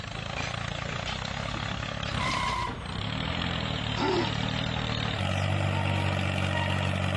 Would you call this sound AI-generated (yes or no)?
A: no